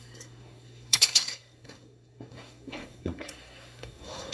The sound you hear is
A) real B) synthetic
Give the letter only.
B